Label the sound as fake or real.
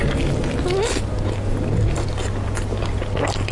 real